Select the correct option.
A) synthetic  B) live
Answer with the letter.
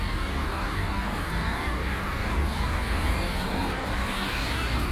A